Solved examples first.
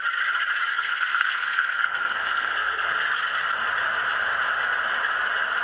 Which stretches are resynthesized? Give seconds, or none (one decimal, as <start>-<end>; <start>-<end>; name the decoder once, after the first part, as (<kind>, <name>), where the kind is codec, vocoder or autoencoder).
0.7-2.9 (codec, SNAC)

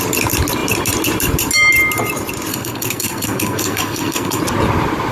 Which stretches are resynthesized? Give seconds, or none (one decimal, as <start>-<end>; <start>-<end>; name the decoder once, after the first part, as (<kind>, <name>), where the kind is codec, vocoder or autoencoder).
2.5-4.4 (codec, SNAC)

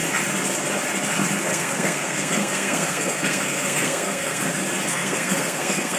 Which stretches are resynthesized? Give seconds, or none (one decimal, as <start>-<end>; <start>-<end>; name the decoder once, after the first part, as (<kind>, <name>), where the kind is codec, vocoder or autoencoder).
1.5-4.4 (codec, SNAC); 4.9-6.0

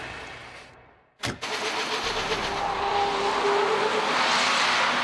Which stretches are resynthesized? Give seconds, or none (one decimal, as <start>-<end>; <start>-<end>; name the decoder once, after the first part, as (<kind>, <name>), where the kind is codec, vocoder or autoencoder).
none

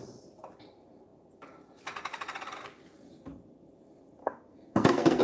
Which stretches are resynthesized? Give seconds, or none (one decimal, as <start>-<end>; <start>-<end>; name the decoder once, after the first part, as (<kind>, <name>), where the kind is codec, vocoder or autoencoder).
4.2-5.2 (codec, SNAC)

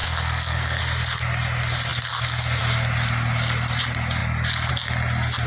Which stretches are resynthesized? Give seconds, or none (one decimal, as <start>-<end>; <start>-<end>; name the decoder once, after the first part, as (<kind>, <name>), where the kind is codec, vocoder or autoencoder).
0.0-0.8 (codec, SNAC)

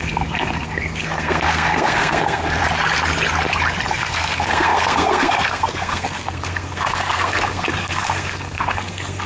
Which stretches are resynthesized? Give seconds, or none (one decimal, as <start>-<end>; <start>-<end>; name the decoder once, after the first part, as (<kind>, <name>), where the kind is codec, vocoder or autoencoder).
0.0-2.6 (codec, SNAC); 3.9-9.3

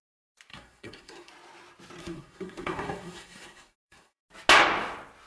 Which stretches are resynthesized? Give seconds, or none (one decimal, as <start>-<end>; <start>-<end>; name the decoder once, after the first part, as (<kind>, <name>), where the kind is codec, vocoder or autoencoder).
0.5-1.3 (codec, SNAC); 2.0-4.2